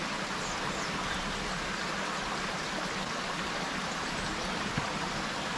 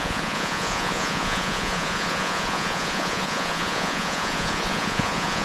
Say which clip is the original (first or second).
first